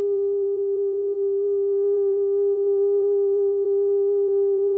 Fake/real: fake